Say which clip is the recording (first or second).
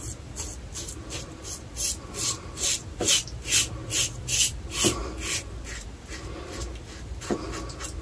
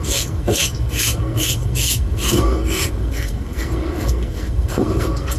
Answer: first